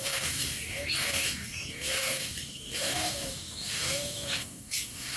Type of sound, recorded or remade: remade